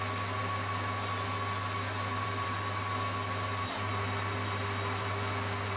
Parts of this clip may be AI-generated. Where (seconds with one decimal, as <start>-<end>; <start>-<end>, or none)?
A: none